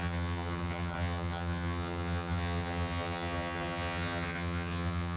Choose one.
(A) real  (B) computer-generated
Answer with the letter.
B